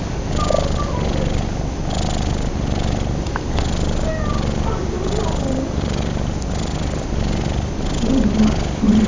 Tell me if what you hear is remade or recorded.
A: recorded